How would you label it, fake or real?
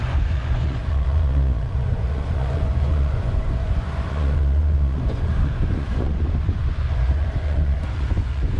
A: fake